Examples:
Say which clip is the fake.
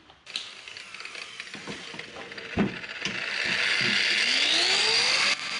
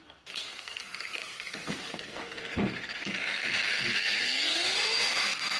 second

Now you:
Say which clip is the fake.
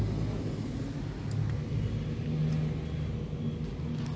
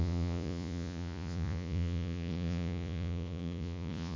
second